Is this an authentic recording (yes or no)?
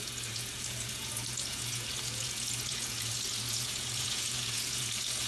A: no